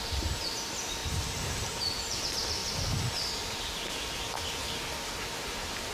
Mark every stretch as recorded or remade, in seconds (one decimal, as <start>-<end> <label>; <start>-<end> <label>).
0.0-2.6 remade; 2.6-5.4 recorded; 5.4-5.9 remade